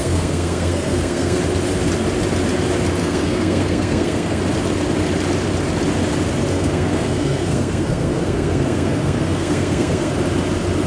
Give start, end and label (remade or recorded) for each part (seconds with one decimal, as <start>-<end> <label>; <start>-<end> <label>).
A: 0.0-1.4 remade; 1.4-3.0 recorded; 3.0-4.4 remade; 4.4-6.5 recorded; 6.5-10.1 remade; 10.1-10.9 recorded

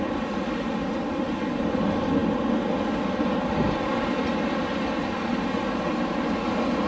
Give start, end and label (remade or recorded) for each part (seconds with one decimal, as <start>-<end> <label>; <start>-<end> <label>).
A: 0.0-6.9 recorded

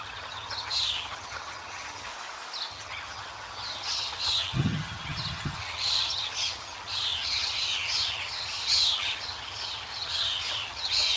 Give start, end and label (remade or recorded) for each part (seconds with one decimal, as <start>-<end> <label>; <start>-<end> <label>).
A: 0.0-2.1 remade; 2.1-2.7 recorded; 2.7-11.2 remade